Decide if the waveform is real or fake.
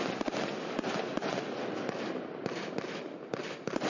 real